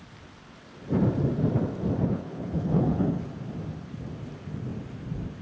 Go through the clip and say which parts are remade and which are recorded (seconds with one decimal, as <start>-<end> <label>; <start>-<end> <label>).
0.0-2.0 recorded; 2.0-3.3 remade; 3.3-5.4 recorded